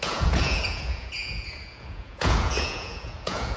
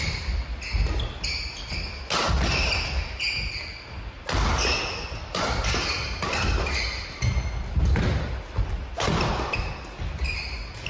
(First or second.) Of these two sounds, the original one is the second